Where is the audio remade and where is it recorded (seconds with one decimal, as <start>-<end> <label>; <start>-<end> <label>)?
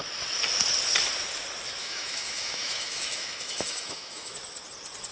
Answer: 0.0-1.8 recorded; 1.8-4.3 remade; 4.3-5.1 recorded